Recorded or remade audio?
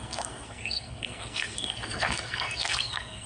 remade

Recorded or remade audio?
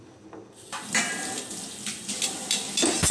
recorded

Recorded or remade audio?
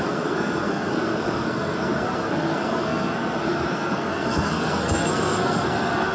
remade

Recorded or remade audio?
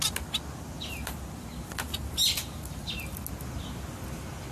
recorded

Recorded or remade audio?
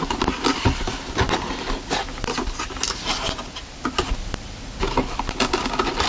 recorded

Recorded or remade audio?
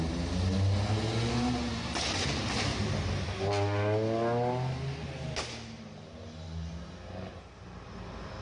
recorded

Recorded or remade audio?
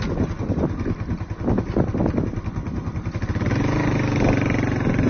recorded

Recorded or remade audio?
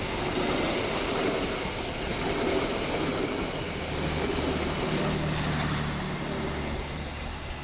recorded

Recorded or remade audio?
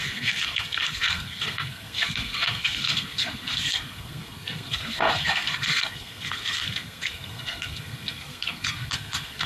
remade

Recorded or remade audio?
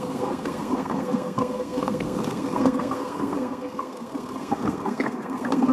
remade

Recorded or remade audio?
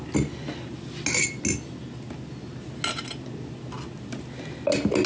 recorded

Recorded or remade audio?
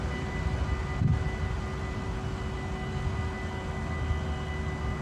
recorded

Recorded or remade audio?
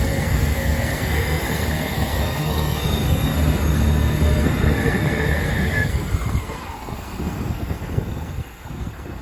remade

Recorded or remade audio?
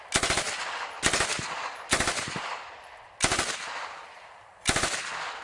recorded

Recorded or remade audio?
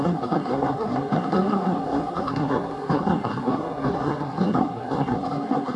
remade